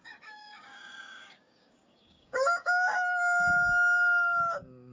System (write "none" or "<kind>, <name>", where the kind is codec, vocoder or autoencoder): codec, DAC